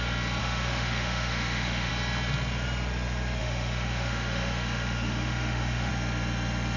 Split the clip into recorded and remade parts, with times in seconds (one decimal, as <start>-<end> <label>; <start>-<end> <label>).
0.0-0.4 recorded; 0.4-1.9 remade; 1.9-3.4 recorded; 3.4-5.9 remade; 5.9-6.8 recorded

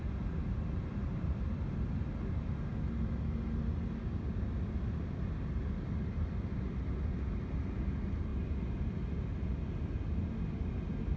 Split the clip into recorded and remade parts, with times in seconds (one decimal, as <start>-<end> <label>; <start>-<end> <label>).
0.0-4.0 recorded; 4.0-4.5 remade; 4.5-11.2 recorded

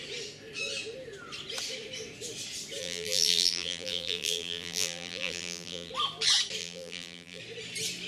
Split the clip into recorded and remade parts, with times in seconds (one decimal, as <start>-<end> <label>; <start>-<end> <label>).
0.0-2.8 recorded; 2.8-5.9 remade; 5.9-6.6 recorded; 6.6-7.4 remade; 7.4-8.1 recorded

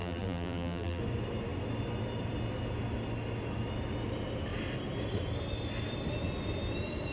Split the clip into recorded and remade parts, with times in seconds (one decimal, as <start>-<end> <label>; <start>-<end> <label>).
0.0-1.0 remade; 1.0-7.1 recorded

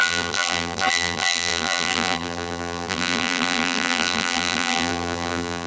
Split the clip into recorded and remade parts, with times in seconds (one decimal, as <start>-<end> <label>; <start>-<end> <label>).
0.0-5.7 remade